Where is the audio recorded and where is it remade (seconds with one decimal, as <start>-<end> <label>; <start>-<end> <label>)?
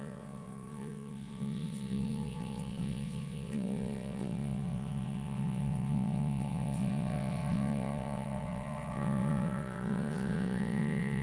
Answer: 0.0-11.2 remade